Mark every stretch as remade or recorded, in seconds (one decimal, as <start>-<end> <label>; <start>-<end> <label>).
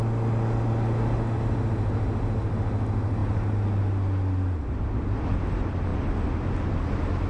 0.0-7.3 recorded